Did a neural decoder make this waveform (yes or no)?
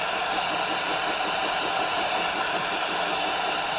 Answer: no